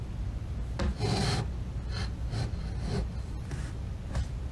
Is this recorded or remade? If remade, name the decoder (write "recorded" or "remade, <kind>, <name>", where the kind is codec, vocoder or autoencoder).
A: recorded